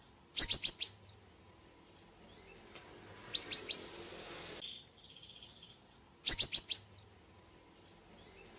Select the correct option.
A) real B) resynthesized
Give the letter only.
A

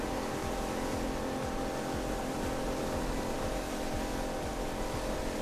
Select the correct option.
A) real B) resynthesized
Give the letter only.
A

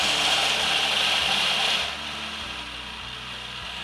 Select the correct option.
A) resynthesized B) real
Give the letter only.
B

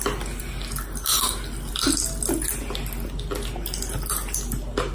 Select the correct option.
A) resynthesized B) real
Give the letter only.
B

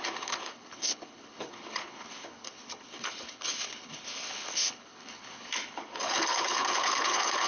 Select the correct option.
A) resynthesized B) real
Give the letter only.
A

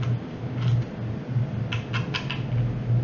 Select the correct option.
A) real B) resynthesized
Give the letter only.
A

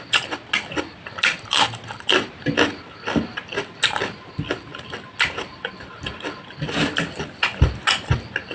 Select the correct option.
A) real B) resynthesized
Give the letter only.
A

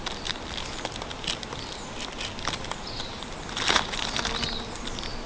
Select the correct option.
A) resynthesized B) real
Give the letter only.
B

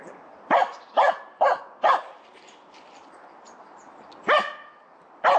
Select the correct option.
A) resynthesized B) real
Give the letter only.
B